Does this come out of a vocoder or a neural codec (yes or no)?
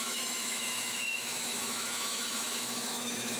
yes